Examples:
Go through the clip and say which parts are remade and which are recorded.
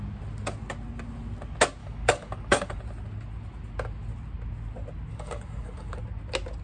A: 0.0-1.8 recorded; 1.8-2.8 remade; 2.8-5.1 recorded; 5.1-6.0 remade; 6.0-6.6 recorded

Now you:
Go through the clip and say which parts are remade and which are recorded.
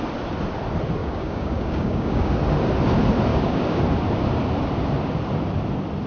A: 0.0-1.0 recorded; 1.0-2.3 remade; 2.3-3.3 recorded; 3.3-3.8 remade; 3.8-6.1 recorded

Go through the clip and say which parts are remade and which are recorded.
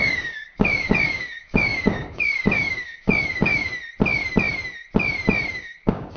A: 0.0-3.7 remade; 3.7-5.5 recorded; 5.5-6.2 remade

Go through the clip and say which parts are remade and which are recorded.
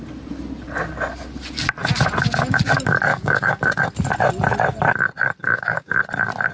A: 0.0-3.1 recorded; 3.1-3.6 remade; 3.6-5.4 recorded; 5.4-6.0 remade; 6.0-6.5 recorded